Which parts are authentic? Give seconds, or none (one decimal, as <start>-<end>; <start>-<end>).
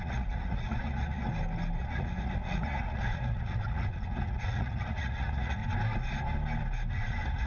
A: 1.3-1.8; 5.6-6.9